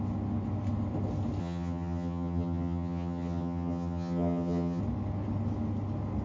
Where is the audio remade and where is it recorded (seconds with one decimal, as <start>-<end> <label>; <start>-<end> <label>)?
0.0-1.4 recorded; 1.4-4.8 remade; 4.8-6.2 recorded